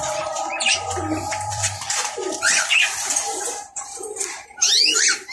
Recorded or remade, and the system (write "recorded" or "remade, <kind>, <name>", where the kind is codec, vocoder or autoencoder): remade, vocoder, BigVGAN v2